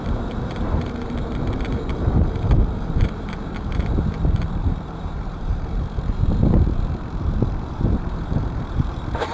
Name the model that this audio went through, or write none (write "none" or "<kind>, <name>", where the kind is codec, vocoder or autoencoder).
vocoder, BigVGAN v2